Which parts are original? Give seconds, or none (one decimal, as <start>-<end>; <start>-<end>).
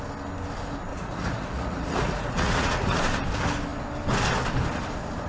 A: 0.0-0.9; 3.0-5.3